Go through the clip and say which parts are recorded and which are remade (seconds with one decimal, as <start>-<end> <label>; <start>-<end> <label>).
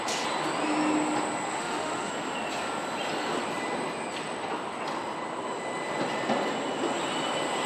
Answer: 0.0-1.5 recorded; 1.5-2.1 remade; 2.1-7.7 recorded